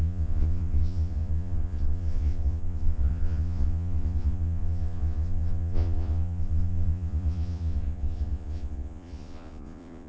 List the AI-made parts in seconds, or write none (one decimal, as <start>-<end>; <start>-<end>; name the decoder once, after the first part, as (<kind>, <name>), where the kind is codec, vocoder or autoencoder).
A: 0.0-10.1 (vocoder, Vocos)